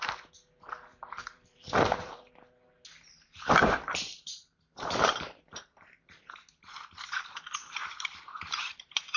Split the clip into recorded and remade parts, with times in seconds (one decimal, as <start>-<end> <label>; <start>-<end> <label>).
0.0-0.9 recorded; 0.9-2.3 remade; 2.3-4.1 recorded; 4.1-6.2 remade; 6.2-7.8 recorded; 7.8-9.2 remade